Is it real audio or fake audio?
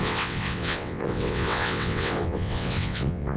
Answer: fake